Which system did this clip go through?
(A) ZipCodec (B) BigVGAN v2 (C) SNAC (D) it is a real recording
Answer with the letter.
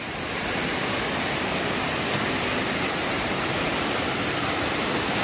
D